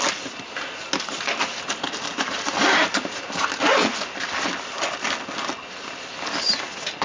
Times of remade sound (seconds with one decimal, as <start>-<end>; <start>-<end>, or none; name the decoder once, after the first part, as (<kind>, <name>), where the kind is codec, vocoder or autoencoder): none